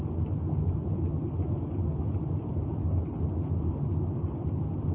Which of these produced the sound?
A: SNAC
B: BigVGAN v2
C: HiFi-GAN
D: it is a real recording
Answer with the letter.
D